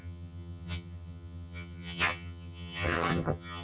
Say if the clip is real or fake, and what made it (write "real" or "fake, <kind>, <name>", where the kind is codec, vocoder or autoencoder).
fake, vocoder, HiFi-GAN